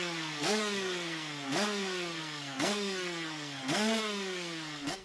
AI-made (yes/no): yes